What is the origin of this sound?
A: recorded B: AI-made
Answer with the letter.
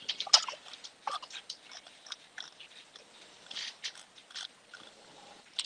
A